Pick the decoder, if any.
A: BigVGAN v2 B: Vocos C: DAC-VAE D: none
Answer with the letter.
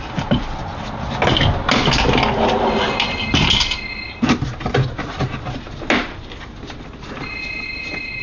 D